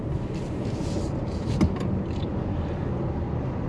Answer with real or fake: real